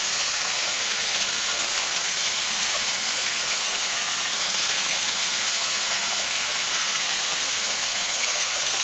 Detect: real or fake fake